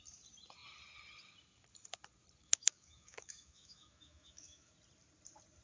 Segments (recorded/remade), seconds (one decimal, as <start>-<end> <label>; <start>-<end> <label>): 0.0-2.4 recorded; 2.4-4.7 remade; 4.7-5.6 recorded